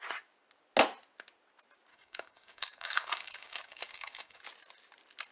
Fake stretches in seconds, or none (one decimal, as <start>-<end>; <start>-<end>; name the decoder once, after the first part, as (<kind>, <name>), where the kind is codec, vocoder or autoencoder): 1.9-4.4 (codec, DAC)